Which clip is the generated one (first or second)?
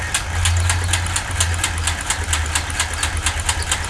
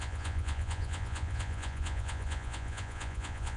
second